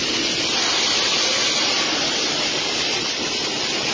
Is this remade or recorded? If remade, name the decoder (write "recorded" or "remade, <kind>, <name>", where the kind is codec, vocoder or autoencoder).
recorded